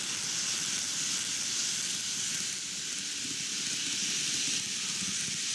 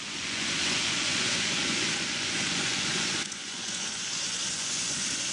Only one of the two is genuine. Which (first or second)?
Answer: first